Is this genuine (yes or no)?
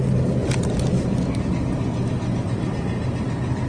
yes